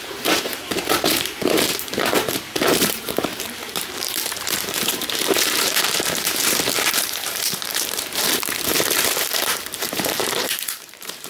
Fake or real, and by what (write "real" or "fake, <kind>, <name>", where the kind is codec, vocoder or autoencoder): fake, vocoder, BigVGAN v2